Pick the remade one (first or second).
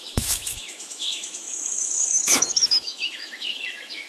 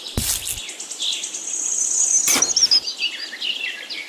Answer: first